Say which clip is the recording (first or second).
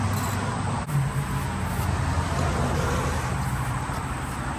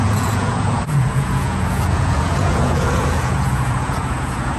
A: first